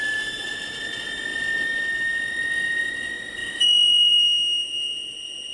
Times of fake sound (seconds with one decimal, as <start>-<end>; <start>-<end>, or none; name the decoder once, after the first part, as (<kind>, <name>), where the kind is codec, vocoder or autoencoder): none